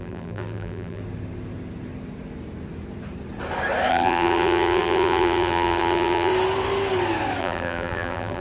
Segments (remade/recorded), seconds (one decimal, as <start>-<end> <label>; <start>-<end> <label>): 0.0-1.0 remade; 1.0-3.9 recorded; 3.9-6.3 remade; 6.3-7.4 recorded; 7.4-8.4 remade